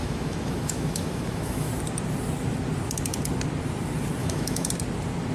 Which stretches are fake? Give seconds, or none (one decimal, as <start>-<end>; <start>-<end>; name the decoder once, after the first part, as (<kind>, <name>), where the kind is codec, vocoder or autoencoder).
0.0-1.7 (autoencoder, DAC-VAE); 4.2-4.7